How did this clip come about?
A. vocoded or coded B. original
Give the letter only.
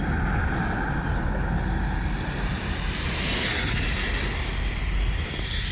B